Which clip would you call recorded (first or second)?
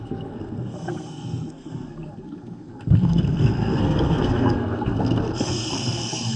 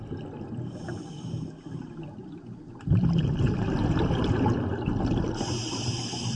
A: second